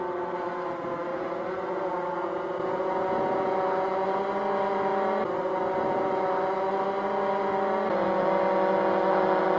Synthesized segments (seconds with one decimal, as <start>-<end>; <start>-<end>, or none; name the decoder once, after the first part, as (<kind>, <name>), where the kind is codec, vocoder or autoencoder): 1.1-4.2 (vocoder, Vocos)